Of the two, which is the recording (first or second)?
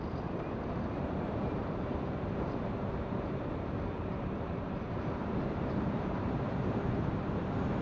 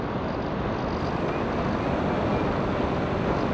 second